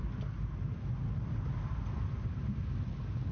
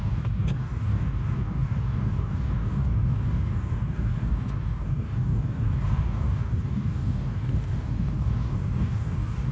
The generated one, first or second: second